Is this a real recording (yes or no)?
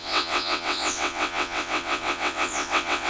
no